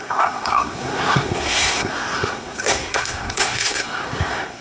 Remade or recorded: remade